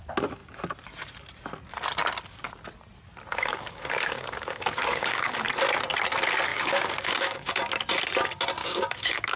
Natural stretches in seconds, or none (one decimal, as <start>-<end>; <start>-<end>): 0.0-3.3; 5.4-6.5; 7.6-8.6